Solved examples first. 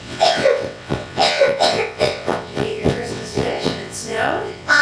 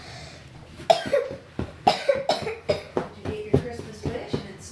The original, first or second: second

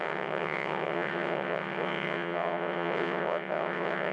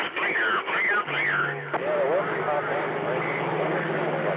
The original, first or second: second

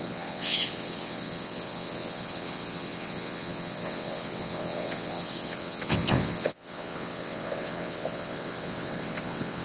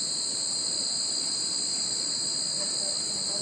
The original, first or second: second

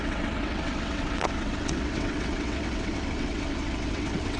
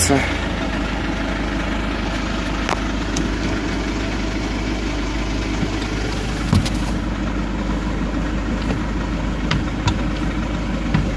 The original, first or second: second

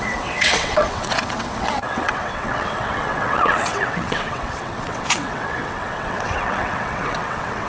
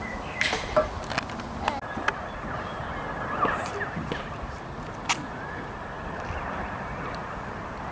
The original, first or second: second